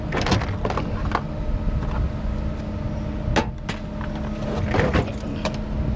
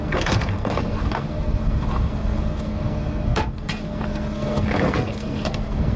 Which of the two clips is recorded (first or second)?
first